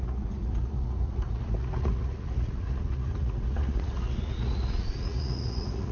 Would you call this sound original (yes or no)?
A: no